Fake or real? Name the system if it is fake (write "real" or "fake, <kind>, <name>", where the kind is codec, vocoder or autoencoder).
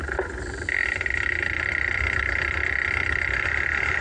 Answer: real